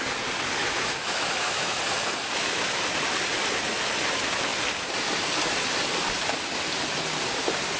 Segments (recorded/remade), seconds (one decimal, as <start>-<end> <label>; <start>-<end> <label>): 0.0-0.6 recorded; 0.6-1.8 remade; 1.8-2.2 recorded; 2.2-2.8 remade; 2.8-7.8 recorded